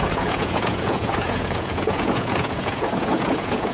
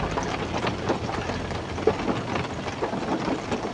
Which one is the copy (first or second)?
first